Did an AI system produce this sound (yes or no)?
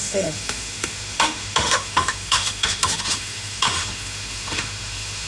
yes